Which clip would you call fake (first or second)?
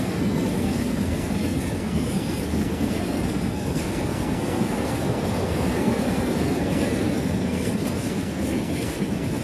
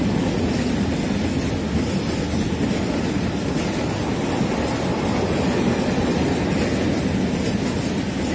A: first